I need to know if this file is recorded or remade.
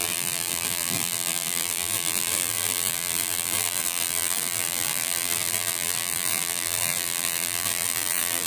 remade